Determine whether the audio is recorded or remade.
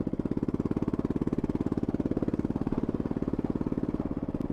recorded